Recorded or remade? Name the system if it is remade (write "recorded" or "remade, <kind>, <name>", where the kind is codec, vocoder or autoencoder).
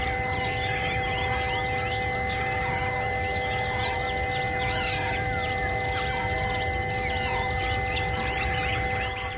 recorded